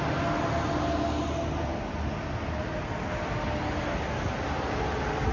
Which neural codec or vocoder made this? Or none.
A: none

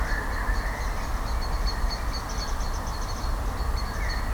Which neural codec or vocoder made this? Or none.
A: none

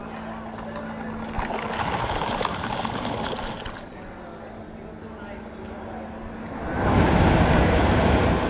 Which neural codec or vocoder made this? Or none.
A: none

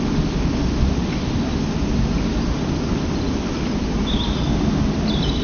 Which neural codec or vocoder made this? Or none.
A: none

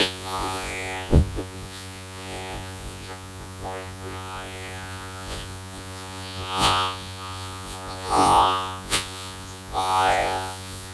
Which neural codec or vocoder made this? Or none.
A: vocoder, Vocos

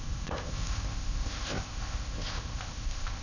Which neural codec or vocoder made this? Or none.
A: codec, ZipCodec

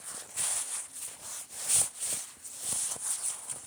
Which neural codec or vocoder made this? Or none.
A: none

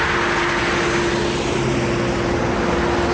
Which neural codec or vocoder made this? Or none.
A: none